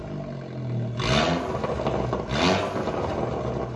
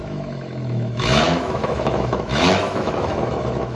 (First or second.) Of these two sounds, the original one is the first